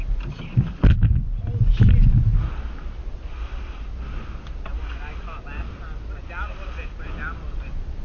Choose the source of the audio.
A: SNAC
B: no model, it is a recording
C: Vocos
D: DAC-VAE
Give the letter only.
B